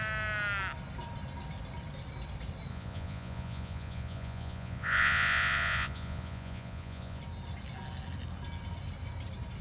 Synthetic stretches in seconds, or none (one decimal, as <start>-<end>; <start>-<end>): 2.7-7.2